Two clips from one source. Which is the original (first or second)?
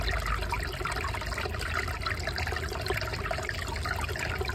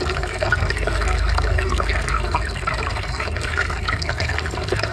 first